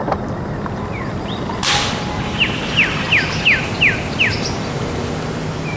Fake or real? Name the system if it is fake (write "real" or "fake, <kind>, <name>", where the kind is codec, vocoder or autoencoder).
fake, vocoder, BigVGAN v2